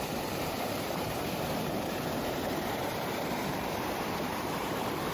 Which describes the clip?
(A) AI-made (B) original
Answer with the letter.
A